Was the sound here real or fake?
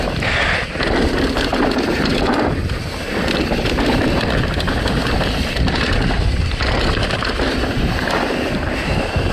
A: real